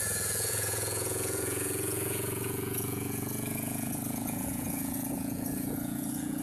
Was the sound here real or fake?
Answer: fake